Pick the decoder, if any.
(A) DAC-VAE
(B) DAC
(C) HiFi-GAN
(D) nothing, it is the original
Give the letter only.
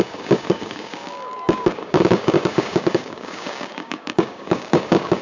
B